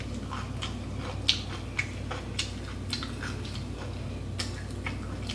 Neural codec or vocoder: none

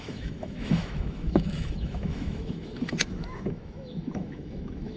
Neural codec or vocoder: autoencoder, DAC-VAE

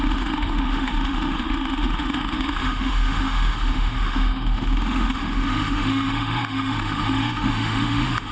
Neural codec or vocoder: autoencoder, DAC-VAE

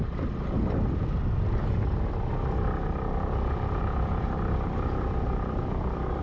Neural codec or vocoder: none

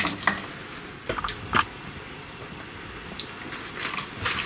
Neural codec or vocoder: none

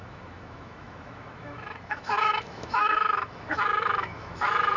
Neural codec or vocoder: autoencoder, DAC-VAE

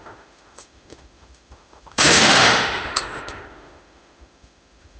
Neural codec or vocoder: autoencoder, DAC-VAE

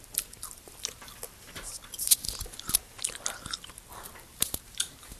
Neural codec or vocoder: none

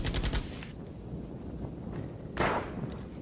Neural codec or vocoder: none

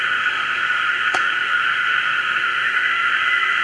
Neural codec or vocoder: autoencoder, DAC-VAE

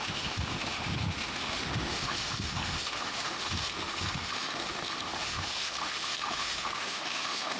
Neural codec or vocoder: autoencoder, DAC-VAE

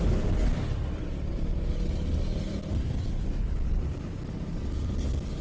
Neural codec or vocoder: none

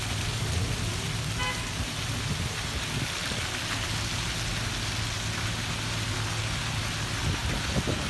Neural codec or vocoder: none